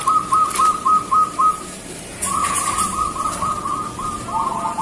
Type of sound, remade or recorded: recorded